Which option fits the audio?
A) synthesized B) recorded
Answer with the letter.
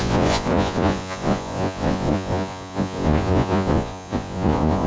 A